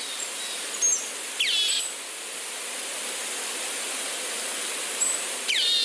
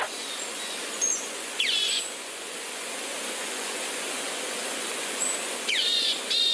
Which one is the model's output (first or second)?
second